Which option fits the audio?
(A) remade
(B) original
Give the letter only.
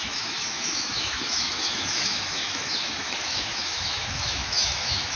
A